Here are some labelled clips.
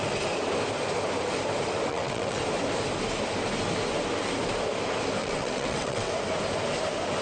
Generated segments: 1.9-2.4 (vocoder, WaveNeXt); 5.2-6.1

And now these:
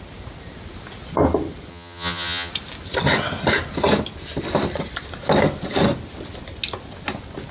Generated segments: 1.7-2.5 (vocoder, HiFi-GAN)

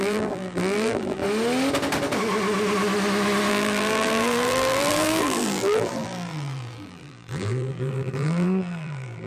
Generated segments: 0.0-1.2 (vocoder, BigVGAN v2); 3.5-9.3

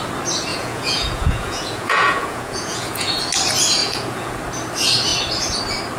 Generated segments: 0.5-3.2 (vocoder, Vocos); 3.8-4.4

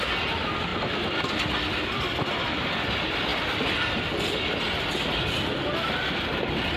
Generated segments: 0.7-2.6 (vocoder, BigVGAN v2); 3.3-4.4

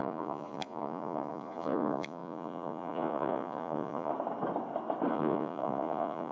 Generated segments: 0.0-4.1 (vocoder, Vocos); 5.1-6.3

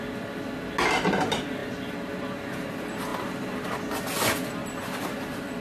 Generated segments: none